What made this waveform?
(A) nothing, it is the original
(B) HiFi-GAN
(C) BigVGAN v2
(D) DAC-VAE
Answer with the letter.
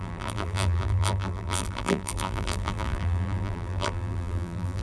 C